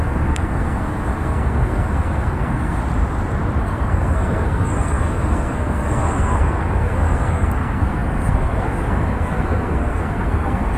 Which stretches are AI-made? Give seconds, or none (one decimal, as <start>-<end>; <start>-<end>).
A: 0.0-2.8; 3.6-10.8